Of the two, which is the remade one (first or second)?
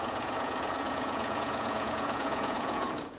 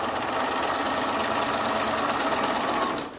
first